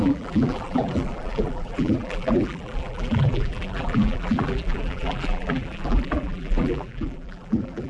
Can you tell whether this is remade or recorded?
remade